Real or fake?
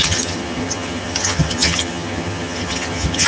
fake